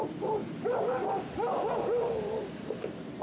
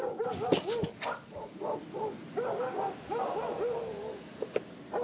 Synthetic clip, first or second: first